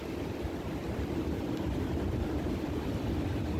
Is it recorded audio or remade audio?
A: recorded